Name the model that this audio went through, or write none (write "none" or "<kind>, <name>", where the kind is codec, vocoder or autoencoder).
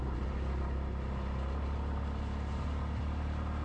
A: none